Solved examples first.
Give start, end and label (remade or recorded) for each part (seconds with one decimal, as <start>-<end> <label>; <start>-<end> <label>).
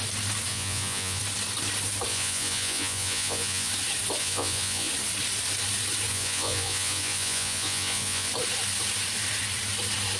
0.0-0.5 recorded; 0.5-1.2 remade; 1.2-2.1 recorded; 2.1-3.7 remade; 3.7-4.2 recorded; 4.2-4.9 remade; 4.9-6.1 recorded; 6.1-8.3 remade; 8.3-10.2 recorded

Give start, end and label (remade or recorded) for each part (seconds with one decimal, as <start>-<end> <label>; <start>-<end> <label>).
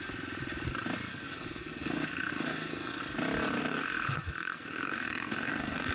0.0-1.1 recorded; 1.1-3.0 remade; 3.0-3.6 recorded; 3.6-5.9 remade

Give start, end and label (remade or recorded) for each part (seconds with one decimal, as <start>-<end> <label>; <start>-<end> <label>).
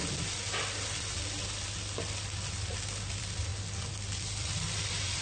0.0-3.1 recorded; 3.1-3.5 remade; 3.5-4.2 recorded; 4.2-5.2 remade